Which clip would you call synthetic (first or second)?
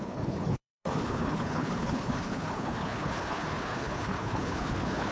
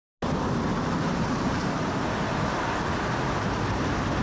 first